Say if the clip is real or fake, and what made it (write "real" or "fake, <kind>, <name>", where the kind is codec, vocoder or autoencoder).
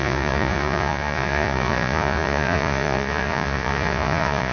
fake, vocoder, Vocos